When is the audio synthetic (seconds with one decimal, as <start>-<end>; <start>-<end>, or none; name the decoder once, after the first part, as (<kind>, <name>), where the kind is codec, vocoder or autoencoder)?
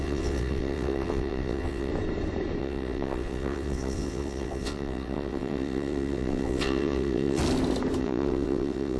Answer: 0.0-1.9 (vocoder, WaveNeXt); 2.6-7.4; 8.0-9.0